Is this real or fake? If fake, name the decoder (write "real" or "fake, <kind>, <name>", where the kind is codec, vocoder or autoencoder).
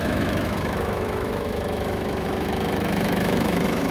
fake, autoencoder, DAC-VAE